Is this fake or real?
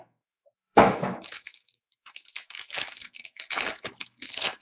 fake